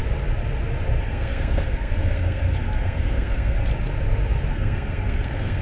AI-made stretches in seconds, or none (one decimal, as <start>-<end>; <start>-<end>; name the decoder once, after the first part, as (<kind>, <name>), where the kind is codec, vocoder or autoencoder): 1.0-3.7 (codec, SNAC); 4.5-5.6